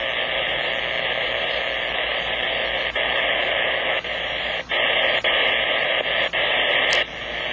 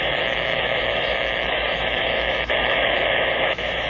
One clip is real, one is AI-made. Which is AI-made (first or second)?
second